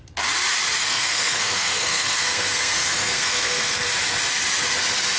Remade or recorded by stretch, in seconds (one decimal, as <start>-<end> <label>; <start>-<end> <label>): 0.0-0.8 recorded; 0.8-3.9 remade; 3.9-5.2 recorded